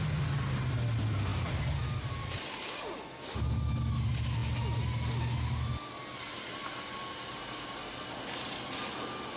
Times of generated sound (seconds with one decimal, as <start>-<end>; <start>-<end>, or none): none